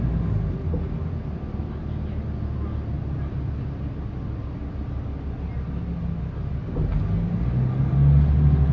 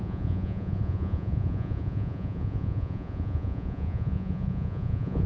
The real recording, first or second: first